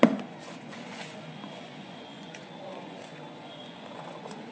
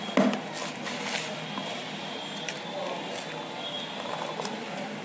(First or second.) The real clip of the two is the second